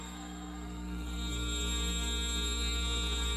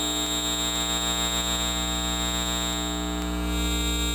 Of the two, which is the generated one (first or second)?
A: first